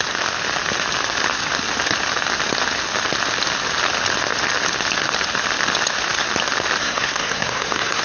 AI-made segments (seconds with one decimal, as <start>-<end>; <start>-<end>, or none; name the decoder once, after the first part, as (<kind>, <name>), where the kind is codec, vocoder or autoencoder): 6.8-8.0 (codec, SNAC)